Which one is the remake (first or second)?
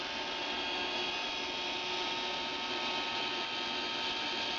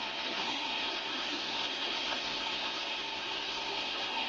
second